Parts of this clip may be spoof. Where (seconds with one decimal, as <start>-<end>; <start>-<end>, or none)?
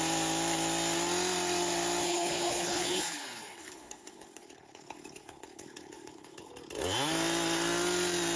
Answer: 2.0-6.5